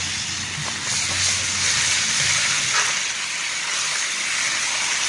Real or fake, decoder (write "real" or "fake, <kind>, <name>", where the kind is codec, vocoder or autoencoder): real